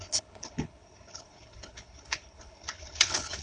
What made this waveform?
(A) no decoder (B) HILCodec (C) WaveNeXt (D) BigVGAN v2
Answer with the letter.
B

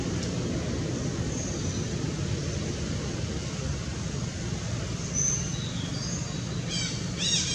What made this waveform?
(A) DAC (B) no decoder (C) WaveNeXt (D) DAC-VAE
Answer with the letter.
B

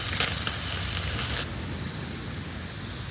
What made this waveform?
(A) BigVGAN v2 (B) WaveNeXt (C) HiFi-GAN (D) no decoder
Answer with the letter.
D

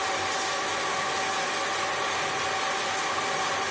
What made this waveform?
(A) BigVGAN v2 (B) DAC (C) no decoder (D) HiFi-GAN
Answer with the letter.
C